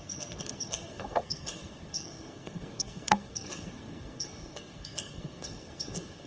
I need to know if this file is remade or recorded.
remade